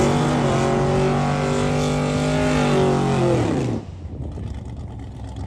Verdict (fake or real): real